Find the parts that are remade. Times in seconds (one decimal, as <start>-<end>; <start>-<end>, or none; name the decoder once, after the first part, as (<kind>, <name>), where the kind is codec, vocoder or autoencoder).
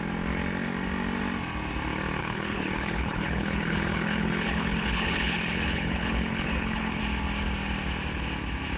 2.2-7.0 (codec, HILCodec)